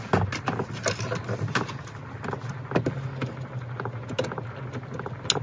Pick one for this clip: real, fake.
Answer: real